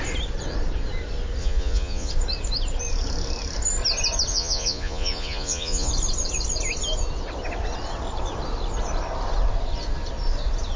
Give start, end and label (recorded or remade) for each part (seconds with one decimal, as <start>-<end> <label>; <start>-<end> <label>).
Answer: 0.0-1.4 recorded; 1.4-2.1 remade; 2.1-4.3 recorded; 4.3-5.9 remade; 5.9-10.8 recorded